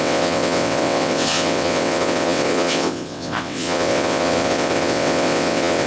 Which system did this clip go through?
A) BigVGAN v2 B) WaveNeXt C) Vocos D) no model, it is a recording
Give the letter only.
B